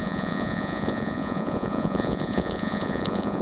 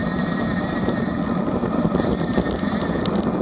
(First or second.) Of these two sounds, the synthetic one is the first